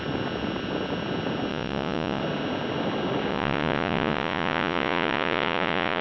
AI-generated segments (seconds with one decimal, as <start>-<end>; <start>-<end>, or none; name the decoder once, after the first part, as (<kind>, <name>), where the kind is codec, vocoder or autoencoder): 1.5-2.2 (vocoder, Vocos); 3.3-6.0